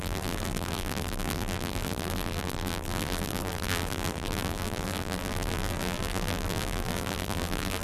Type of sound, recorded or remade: remade